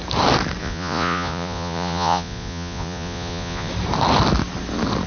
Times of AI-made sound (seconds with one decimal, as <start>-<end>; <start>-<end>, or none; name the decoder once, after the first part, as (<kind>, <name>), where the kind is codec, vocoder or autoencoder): 0.6-3.7 (vocoder, Vocos)